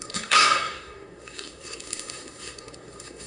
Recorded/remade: remade